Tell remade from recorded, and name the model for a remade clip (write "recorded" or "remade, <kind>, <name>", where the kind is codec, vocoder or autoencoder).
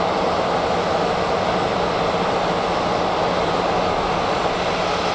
recorded